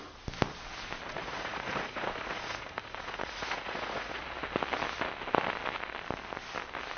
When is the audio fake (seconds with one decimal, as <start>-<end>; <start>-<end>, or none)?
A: 1.1-4.2